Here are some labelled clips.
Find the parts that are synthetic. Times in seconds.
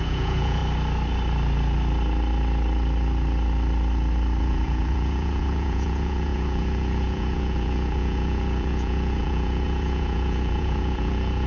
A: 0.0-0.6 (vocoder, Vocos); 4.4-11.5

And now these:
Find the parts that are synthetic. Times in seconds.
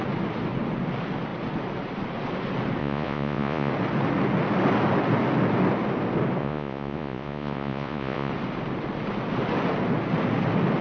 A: 2.8-3.7 (vocoder, Vocos); 6.4-8.3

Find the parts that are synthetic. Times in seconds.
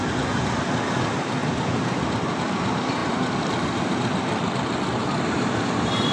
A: none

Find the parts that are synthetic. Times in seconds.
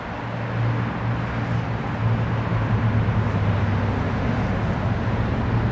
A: none